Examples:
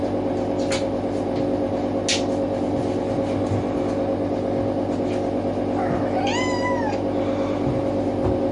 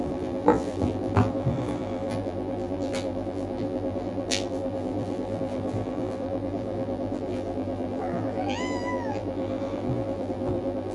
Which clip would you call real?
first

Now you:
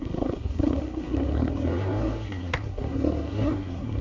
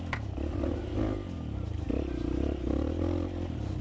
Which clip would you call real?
second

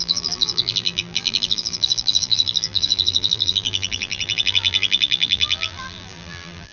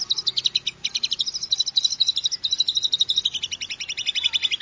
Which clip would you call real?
second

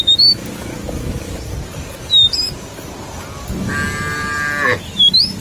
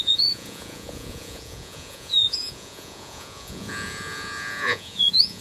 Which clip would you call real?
first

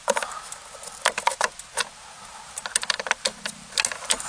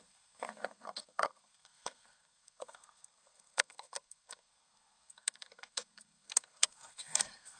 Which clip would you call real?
first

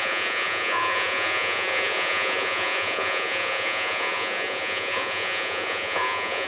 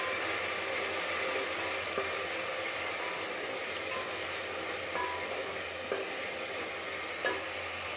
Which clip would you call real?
second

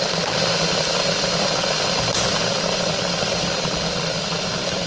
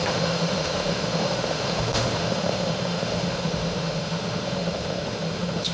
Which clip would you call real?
first